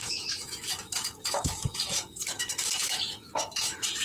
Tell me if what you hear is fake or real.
fake